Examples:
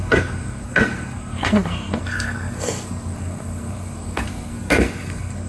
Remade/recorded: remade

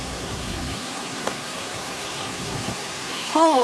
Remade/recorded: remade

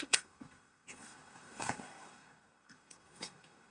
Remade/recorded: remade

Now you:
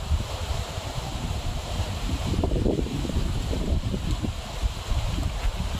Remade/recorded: remade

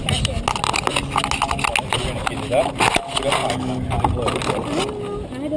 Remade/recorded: recorded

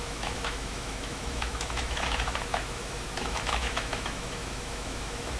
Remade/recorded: remade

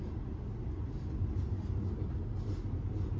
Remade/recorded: recorded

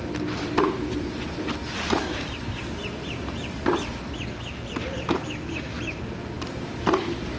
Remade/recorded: recorded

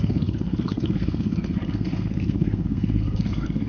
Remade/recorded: remade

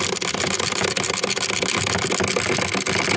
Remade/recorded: recorded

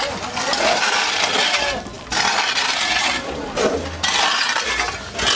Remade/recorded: recorded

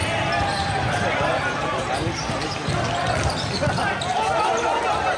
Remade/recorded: recorded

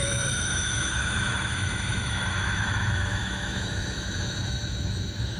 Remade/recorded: remade